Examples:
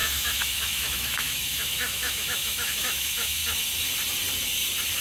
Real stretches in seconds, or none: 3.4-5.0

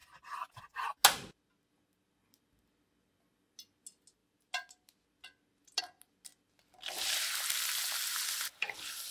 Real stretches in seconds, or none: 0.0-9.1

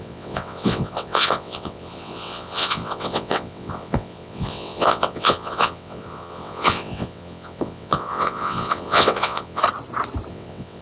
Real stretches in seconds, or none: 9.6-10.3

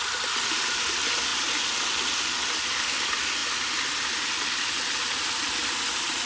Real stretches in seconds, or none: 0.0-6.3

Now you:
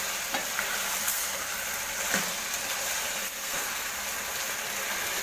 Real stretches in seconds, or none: 0.0-1.0; 1.5-3.2; 3.9-5.2